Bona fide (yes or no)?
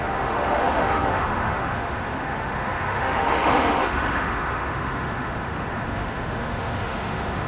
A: no